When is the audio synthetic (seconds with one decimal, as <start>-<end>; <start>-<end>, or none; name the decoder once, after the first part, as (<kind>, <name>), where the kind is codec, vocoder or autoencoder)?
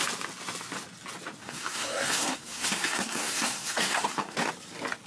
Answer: 1.4-4.5 (codec, SNAC)